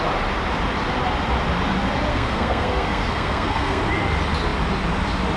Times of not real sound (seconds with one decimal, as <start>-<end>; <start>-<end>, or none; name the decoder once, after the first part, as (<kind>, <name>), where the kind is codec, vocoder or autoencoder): 2.1-3.8 (codec, SNAC)

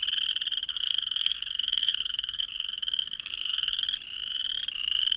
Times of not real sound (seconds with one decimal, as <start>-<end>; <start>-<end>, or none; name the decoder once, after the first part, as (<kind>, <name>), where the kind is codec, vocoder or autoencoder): 0.7-3.8 (codec, SNAC)

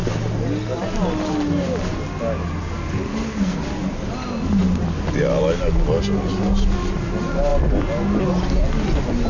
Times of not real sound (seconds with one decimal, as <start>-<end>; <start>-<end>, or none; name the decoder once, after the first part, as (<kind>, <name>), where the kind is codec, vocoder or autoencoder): 3.1-3.6 (codec, SNAC)

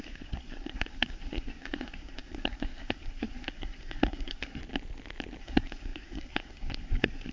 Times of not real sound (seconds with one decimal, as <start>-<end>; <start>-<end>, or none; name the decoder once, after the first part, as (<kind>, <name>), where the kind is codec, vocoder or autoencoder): 0.0-4.6 (codec, SNAC); 5.4-7.3

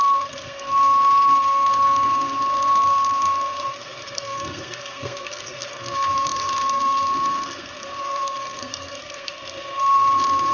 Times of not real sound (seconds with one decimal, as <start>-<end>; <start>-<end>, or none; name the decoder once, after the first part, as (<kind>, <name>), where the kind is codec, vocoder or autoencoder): 0.0-10.5 (codec, SNAC)

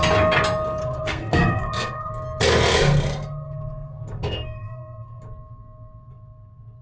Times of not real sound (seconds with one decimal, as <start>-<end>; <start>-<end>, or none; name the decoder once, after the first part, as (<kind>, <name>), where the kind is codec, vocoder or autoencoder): 0.8-2.1 (codec, SNAC); 2.7-5.2